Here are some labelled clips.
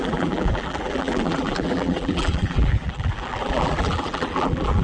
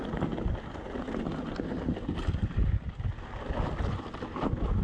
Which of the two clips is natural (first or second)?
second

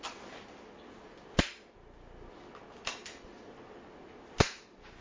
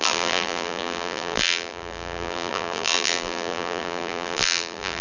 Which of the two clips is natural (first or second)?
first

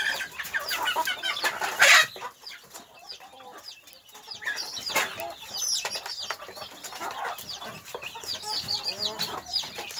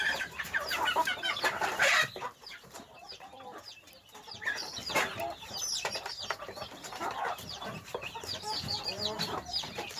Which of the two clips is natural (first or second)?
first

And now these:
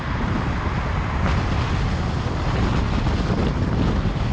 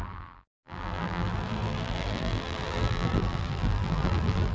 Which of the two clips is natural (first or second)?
first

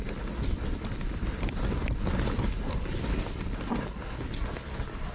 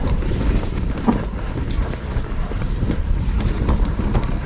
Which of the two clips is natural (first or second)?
first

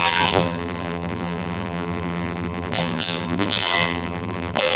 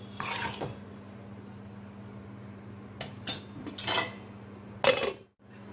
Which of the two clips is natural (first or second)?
second